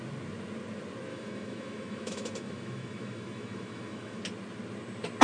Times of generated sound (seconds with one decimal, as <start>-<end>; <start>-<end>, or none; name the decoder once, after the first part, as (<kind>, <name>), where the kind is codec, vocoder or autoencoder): 1.1-4.2 (autoencoder, DAC-VAE)